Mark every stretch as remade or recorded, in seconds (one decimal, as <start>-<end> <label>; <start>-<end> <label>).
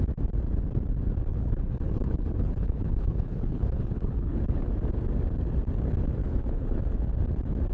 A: 0.0-1.3 recorded; 1.3-4.6 remade; 4.6-6.2 recorded; 6.2-6.8 remade; 6.8-7.7 recorded